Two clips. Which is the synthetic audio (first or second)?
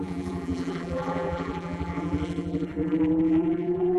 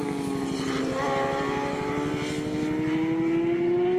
first